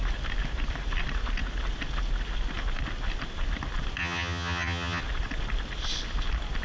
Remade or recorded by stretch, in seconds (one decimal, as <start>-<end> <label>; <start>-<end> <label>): 0.0-4.0 recorded; 4.0-5.0 remade; 5.0-6.6 recorded